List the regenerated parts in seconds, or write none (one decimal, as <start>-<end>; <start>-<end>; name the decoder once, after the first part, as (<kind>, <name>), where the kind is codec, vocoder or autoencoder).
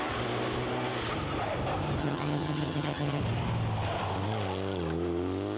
2.0-3.2 (vocoder, HiFi-GAN)